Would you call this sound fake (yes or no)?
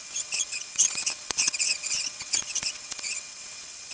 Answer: yes